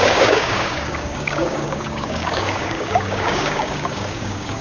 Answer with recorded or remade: remade